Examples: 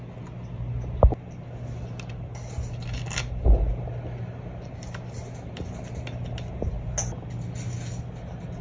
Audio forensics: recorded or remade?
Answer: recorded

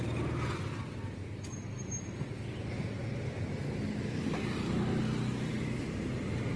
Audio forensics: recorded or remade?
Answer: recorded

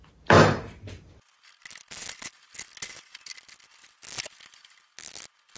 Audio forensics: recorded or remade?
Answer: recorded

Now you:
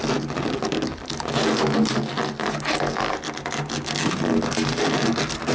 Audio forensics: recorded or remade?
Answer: recorded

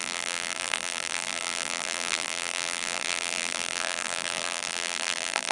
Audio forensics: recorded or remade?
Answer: remade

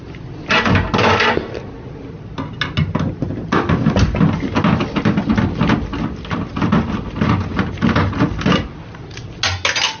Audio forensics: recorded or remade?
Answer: recorded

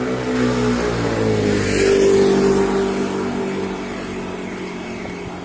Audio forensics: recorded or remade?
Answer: recorded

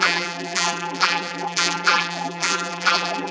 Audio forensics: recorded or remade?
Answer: remade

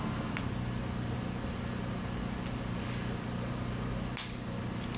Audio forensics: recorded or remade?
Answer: recorded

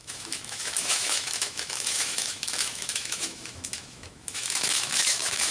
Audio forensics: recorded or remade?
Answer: remade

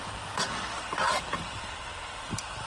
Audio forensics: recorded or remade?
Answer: remade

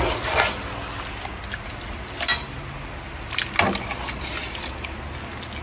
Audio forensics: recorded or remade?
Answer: recorded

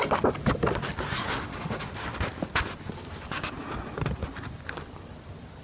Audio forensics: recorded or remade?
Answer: recorded